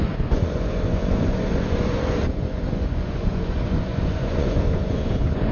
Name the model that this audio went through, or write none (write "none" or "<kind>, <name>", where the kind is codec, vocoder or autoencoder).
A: vocoder, Vocos